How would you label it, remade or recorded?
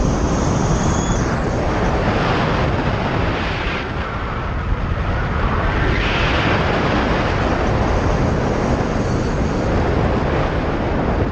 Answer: recorded